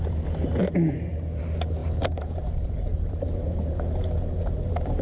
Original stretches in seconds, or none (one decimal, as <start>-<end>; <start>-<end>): 0.0-1.8